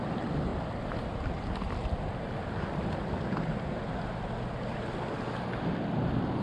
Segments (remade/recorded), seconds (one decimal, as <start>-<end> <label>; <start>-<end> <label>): 0.0-6.4 recorded